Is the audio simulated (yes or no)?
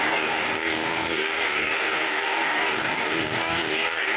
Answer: yes